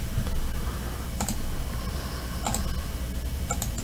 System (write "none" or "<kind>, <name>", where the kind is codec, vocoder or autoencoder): none